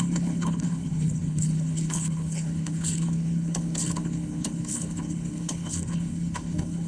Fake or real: fake